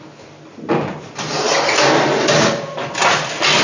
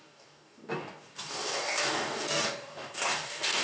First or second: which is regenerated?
second